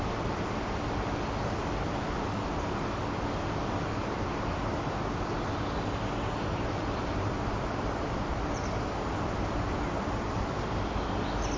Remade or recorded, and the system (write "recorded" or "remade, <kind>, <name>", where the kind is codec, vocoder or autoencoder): recorded